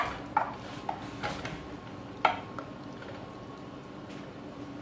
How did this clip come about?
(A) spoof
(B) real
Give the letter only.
B